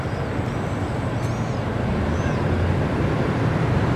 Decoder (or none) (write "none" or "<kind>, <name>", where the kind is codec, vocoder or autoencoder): none